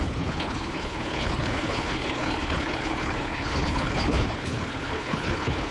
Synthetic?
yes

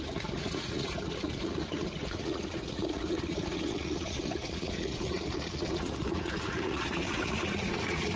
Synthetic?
yes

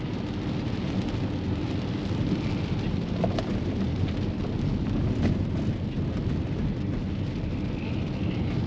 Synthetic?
no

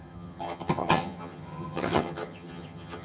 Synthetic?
yes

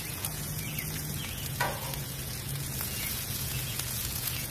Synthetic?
yes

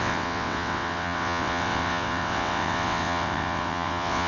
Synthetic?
yes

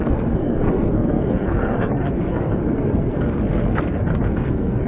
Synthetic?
yes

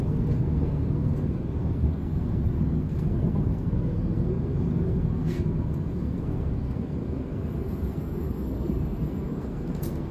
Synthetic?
yes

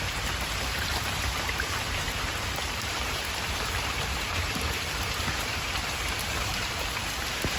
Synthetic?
yes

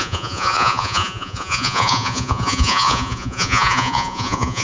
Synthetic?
yes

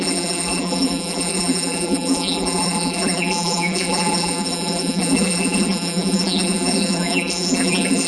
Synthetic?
yes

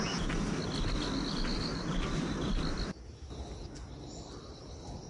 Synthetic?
no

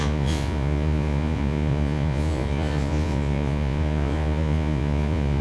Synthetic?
yes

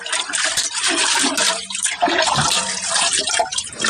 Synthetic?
yes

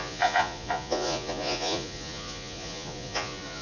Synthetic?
yes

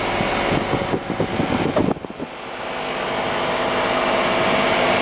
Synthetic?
no